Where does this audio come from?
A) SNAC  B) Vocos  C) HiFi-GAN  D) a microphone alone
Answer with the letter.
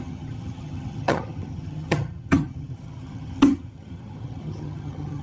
C